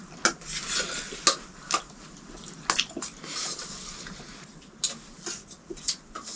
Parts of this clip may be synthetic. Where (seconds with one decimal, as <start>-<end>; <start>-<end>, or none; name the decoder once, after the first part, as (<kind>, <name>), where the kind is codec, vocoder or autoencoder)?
none

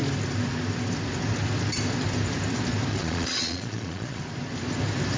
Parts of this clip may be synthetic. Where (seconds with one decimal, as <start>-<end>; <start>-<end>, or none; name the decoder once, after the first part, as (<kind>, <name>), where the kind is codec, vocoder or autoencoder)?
2.9-4.2 (vocoder, Vocos)

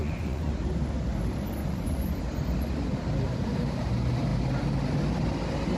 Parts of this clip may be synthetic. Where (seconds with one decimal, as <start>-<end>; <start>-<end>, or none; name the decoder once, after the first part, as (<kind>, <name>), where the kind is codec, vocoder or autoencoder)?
0.0-0.5 (vocoder, Vocos); 1.6-2.2

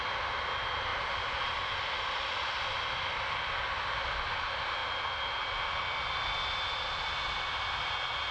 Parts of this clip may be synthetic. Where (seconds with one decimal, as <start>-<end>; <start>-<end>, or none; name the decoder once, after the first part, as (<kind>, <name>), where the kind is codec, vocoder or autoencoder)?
none